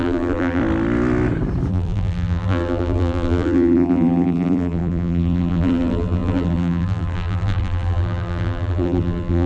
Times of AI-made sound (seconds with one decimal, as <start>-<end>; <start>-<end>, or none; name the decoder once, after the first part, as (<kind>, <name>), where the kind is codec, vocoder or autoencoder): 0.0-0.6 (vocoder, BigVGAN v2); 1.7-9.5